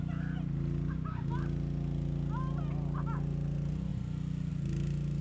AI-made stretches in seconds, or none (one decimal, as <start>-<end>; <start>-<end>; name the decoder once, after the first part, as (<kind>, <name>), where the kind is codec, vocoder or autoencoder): none